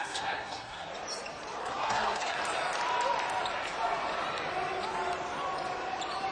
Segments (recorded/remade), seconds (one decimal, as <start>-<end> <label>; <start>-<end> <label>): 0.0-0.9 remade; 0.9-1.6 recorded; 1.6-2.4 remade; 2.4-6.3 recorded